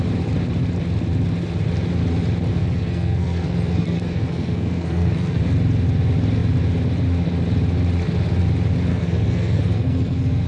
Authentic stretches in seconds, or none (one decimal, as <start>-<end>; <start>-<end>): 0.0-2.5; 5.4-8.9

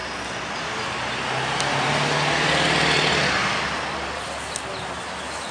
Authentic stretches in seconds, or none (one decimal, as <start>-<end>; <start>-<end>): 0.0-5.5

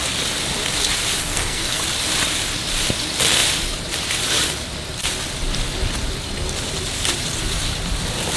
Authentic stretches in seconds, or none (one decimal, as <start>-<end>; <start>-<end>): 0.0-1.2; 1.8-8.4

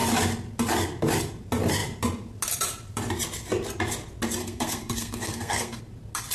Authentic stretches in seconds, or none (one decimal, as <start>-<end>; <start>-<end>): 0.0-4.4; 5.8-6.3

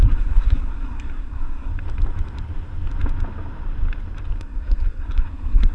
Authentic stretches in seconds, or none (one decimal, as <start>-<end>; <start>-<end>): 1.7-4.4